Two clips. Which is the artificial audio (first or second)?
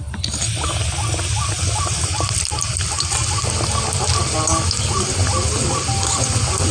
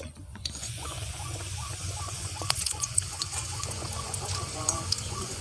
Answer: second